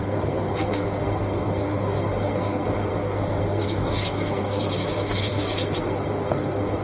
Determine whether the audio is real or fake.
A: fake